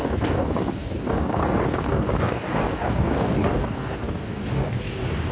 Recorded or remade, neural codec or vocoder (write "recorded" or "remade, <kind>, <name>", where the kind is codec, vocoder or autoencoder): remade, codec, DAC